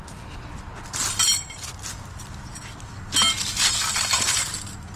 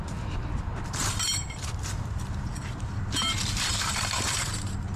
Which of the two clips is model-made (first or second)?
second